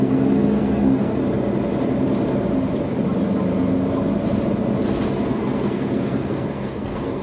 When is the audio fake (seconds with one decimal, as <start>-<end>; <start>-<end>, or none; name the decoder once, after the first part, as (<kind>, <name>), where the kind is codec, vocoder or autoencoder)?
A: 0.0-1.2 (codec, SNAC); 5.3-7.2